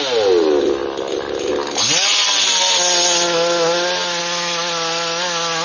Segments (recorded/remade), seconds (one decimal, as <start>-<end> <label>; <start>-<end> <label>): 0.0-5.6 recorded